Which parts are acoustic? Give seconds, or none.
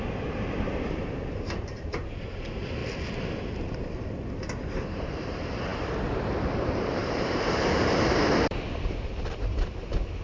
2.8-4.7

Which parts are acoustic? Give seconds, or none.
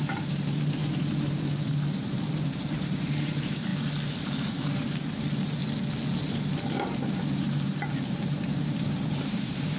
3.7-4.5; 5.6-7.0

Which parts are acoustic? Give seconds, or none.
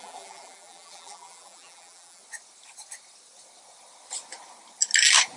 2.2-5.4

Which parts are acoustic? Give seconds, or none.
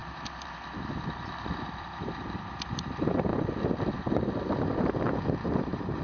3.3-3.9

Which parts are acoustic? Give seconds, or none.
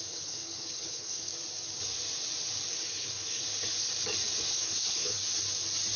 1.3-2.7; 3.4-4.5; 5.2-6.0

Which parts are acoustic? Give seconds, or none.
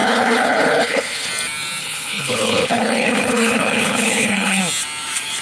1.3-1.8; 4.6-5.4